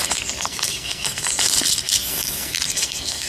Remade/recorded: remade